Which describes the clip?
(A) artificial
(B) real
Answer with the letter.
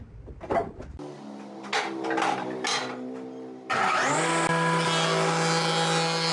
B